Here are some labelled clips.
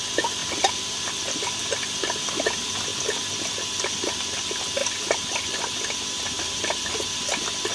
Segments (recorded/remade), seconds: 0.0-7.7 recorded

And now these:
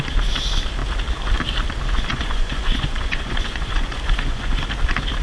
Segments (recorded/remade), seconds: 0.0-2.1 recorded; 2.1-4.5 remade; 4.5-5.2 recorded

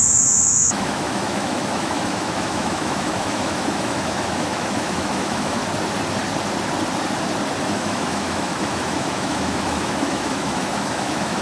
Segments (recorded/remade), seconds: 0.0-5.6 remade; 5.6-7.6 recorded; 7.6-11.4 remade

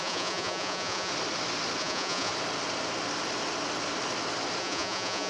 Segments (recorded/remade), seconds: 0.0-1.1 remade; 1.1-1.8 recorded; 1.8-2.3 remade; 2.3-4.6 recorded; 4.6-5.3 remade

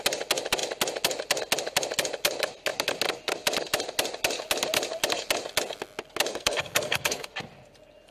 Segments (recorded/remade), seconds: 0.0-6.3 recorded; 6.3-7.3 remade; 7.3-8.1 recorded